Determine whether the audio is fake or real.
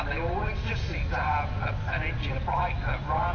real